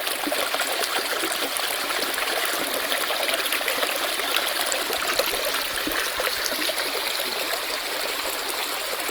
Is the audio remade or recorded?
recorded